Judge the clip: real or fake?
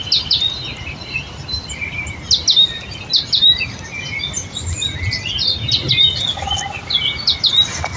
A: real